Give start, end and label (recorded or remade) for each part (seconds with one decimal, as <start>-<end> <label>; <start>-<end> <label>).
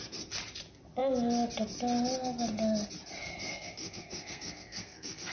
0.0-3.5 recorded; 3.5-5.3 remade